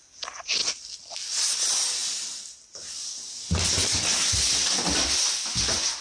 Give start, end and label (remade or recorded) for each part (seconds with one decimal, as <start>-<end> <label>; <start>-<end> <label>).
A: 0.0-6.0 recorded